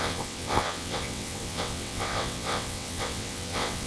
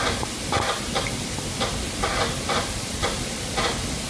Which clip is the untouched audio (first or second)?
second